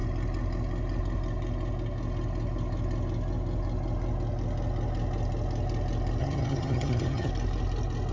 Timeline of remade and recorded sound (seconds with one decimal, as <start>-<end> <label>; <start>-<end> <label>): 0.0-6.2 recorded; 6.2-7.3 remade; 7.3-8.1 recorded